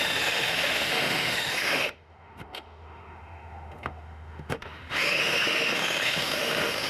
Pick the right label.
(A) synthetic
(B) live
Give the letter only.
A